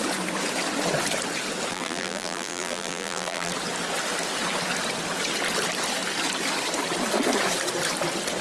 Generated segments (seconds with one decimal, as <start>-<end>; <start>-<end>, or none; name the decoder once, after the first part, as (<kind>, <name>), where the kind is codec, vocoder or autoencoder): 1.7-3.5 (vocoder, BigVGAN v2)